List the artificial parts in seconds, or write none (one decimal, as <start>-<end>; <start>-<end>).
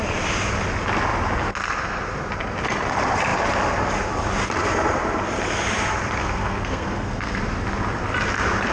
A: 6.2-7.4